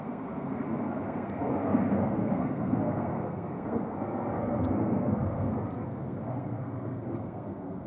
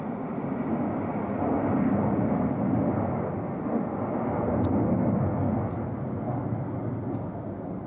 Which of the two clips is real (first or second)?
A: second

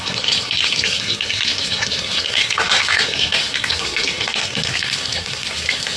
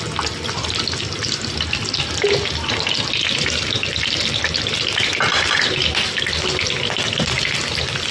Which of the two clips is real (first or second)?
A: second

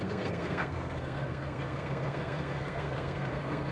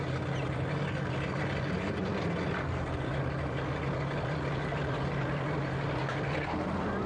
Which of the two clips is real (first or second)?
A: second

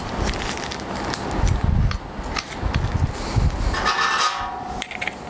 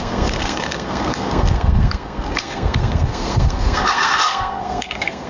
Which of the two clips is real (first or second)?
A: first